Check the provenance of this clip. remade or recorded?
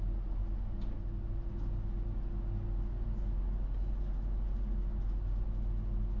recorded